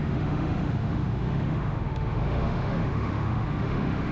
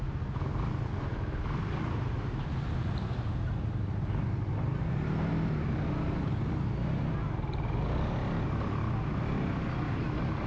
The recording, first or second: second